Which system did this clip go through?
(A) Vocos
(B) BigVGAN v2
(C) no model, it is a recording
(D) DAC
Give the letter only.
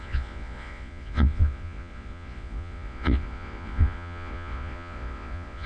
A